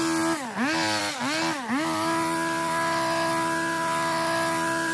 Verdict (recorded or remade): recorded